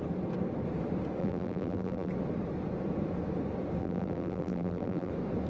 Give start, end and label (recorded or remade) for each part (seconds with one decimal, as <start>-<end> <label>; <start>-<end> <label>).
0.0-1.2 recorded; 1.2-2.1 remade; 2.1-3.8 recorded; 3.8-5.1 remade; 5.1-5.5 recorded